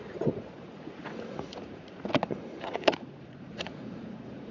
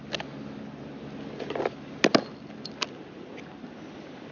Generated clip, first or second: first